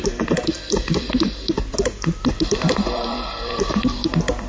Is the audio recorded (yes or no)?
no